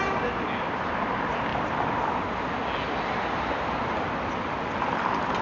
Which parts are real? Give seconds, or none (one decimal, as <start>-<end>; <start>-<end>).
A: 0.0-5.4